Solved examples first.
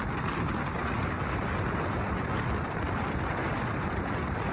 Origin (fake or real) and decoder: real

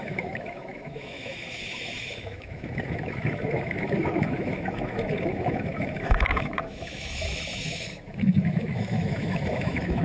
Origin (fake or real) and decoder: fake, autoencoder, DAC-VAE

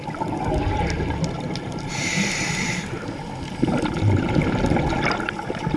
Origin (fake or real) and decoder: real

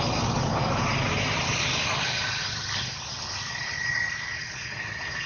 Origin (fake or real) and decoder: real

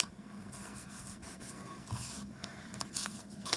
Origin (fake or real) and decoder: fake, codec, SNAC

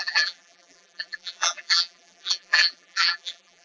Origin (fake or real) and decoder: fake, vocoder, BigVGAN v2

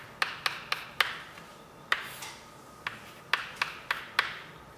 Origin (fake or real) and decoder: real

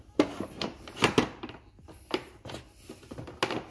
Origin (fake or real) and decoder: real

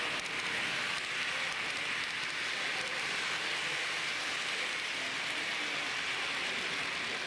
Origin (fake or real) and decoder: real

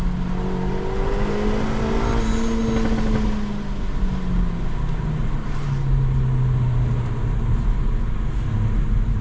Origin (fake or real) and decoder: real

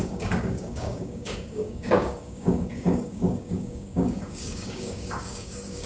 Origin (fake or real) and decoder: fake, codec, DAC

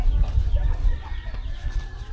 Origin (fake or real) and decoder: real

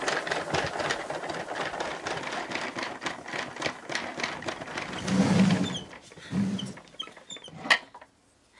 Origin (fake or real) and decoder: real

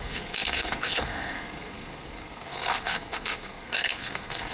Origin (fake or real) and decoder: fake, codec, SNAC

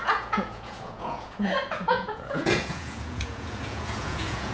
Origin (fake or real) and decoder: fake, vocoder, Vocos